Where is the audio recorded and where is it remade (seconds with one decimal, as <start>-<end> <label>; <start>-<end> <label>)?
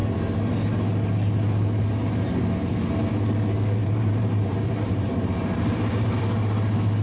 0.0-3.8 recorded; 3.8-6.2 remade; 6.2-7.0 recorded